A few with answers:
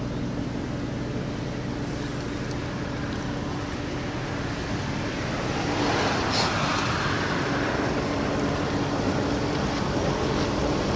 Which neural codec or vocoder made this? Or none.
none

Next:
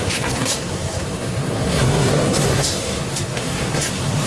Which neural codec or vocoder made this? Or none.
codec, SNAC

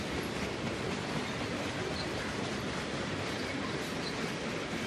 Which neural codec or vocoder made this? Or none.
none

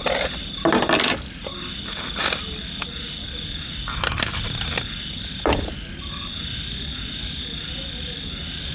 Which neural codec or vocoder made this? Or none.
none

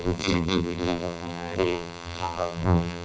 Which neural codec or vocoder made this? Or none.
vocoder, BigVGAN v2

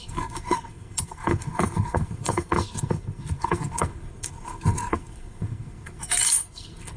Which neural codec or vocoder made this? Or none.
codec, SNAC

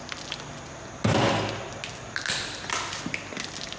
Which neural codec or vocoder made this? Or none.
none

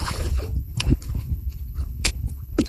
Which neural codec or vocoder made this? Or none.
codec, HILCodec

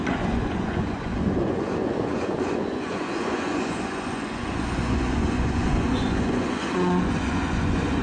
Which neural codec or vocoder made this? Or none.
vocoder, Vocos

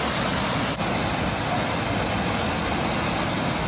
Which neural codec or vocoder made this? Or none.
none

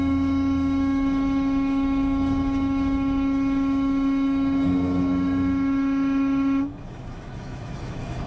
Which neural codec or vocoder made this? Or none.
autoencoder, DAC-VAE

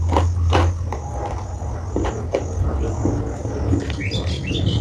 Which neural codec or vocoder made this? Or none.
none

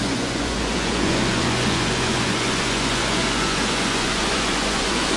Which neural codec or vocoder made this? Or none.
vocoder, Vocos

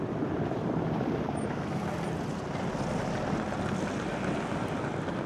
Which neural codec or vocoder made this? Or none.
none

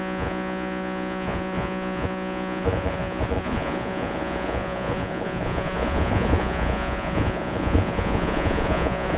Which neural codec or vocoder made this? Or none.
vocoder, Vocos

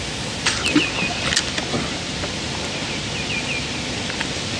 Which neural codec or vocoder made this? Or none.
none